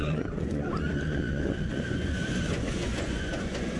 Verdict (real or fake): fake